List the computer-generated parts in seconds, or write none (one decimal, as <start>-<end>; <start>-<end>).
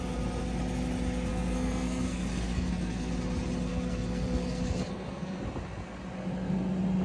1.3-3.1; 3.7-5.4